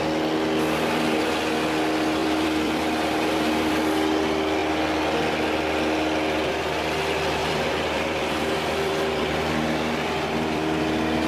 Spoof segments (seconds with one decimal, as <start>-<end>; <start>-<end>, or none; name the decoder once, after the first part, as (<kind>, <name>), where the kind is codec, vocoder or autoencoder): 2.2-3.7 (vocoder, BigVGAN v2); 7.4-10.8